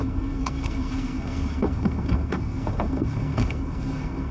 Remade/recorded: remade